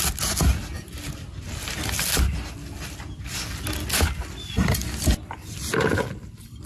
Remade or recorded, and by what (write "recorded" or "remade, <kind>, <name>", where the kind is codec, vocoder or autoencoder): recorded